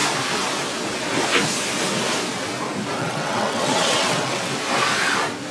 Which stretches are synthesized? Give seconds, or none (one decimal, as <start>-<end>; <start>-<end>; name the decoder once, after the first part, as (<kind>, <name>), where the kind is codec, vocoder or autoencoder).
3.0-4.5 (vocoder, WaveNeXt)